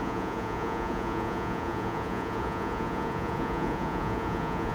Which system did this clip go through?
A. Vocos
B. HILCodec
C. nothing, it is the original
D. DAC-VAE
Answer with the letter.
A